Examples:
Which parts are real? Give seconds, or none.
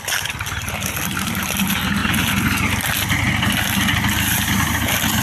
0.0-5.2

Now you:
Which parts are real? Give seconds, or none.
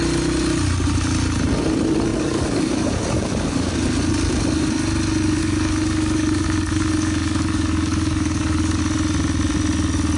0.0-2.1; 3.7-5.4; 8.8-10.2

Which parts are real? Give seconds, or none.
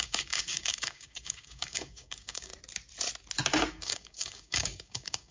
2.5-3.7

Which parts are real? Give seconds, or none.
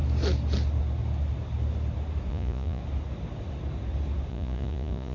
0.0-2.3; 2.8-4.3